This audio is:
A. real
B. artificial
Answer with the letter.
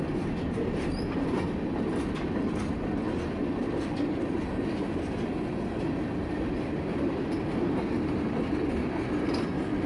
A